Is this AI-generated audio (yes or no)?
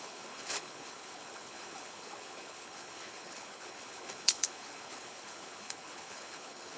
yes